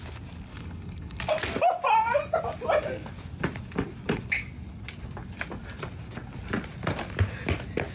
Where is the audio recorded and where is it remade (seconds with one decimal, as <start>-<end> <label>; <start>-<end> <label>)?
0.0-0.5 recorded; 0.5-1.2 remade; 1.2-7.9 recorded